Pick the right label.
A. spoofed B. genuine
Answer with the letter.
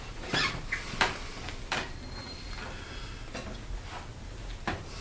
B